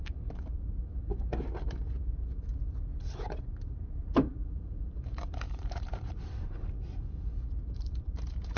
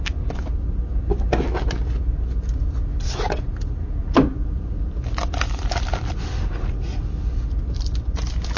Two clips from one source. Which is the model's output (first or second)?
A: first